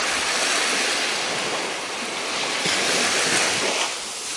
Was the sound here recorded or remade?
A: recorded